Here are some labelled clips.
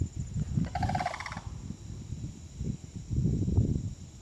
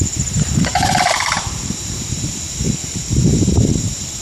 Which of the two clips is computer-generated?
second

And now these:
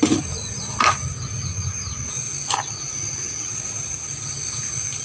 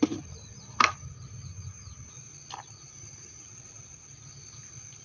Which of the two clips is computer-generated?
second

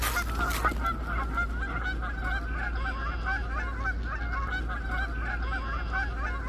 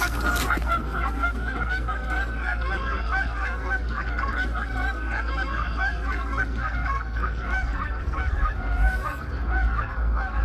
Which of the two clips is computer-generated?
second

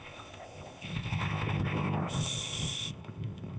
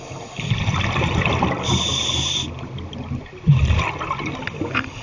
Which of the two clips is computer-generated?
first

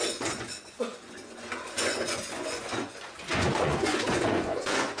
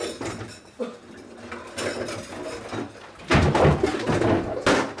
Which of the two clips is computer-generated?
first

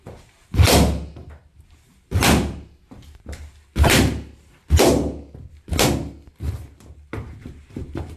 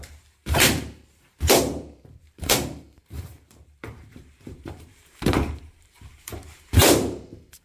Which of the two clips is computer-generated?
second